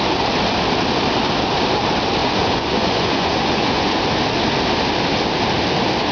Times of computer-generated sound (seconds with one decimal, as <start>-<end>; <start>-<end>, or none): 2.2-4.0